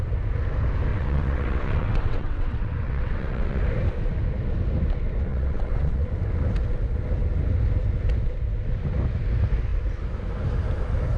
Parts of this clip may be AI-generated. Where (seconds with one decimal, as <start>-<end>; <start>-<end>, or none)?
0.9-3.6; 5.3-6.1